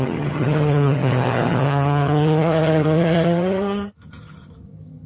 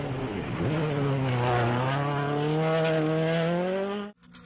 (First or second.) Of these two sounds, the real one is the second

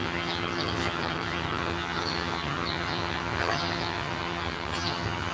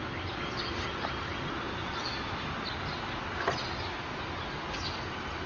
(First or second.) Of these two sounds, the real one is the second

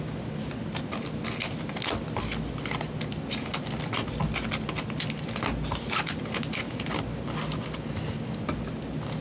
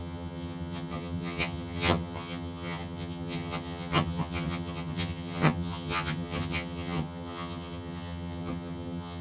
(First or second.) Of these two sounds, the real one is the first